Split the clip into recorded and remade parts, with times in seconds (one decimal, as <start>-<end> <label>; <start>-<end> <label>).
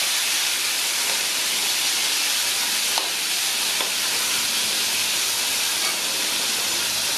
0.0-7.2 recorded